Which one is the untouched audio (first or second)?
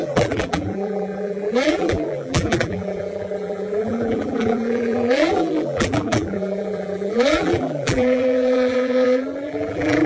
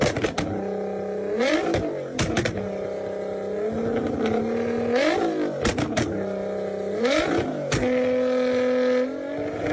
second